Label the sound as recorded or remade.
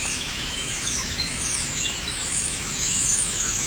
remade